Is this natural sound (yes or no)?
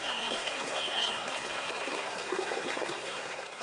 no